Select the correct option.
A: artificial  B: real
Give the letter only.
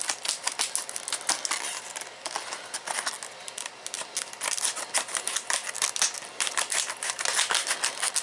B